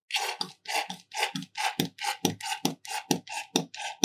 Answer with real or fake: real